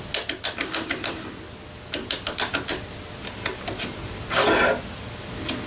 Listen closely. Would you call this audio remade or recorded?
recorded